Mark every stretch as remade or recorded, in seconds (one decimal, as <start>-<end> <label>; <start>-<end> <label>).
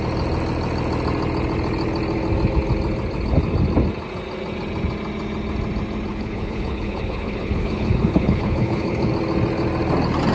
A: 0.0-6.1 recorded; 6.1-9.1 remade; 9.1-10.3 recorded